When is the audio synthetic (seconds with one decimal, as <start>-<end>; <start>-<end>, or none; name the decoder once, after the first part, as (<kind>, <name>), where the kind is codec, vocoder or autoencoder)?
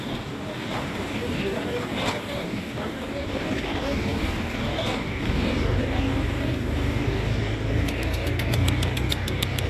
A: 0.0-9.7 (codec, DAC)